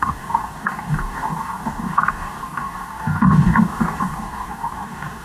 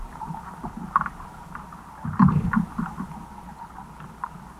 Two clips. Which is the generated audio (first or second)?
first